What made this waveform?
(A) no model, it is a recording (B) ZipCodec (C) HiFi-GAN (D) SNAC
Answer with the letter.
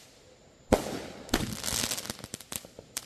A